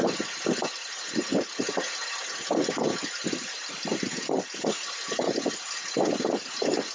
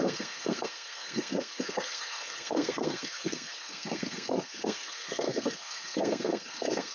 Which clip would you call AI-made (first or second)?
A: second